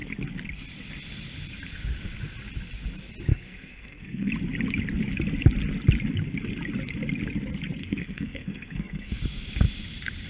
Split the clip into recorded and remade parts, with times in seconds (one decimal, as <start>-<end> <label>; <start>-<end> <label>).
0.0-3.3 recorded; 3.3-4.3 remade; 4.3-7.8 recorded; 7.8-9.2 remade; 9.2-10.3 recorded